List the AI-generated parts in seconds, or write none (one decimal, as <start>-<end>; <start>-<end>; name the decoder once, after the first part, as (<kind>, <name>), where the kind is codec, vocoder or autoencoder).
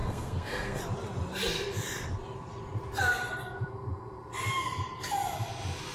0.0-0.8 (codec, SNAC)